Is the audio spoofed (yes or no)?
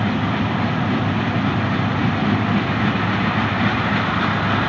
no